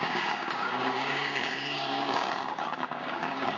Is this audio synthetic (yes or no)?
yes